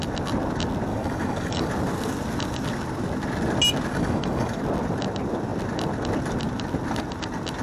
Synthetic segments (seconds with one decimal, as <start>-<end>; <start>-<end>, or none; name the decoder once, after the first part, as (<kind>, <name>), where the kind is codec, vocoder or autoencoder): 0.9-1.7 (codec, DAC); 3.9-4.6